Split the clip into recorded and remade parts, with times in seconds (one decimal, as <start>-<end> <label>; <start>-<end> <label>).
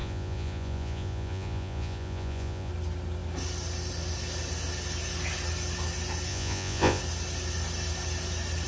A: 0.0-2.7 remade; 2.7-6.3 recorded; 6.3-7.0 remade; 7.0-8.7 recorded